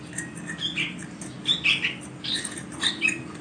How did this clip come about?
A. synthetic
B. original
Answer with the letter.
B